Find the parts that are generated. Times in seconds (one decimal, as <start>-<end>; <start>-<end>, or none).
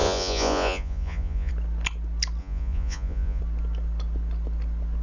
0.0-1.5; 2.4-3.4